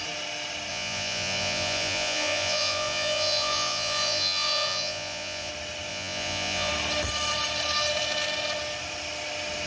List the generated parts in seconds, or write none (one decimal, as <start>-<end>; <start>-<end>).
0.7-5.5; 5.9-6.7